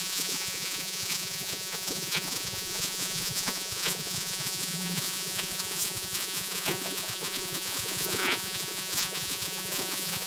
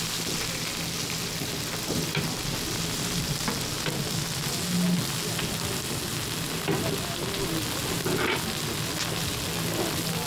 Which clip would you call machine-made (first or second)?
first